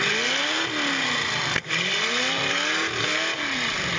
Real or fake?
real